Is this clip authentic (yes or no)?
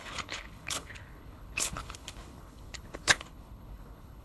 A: no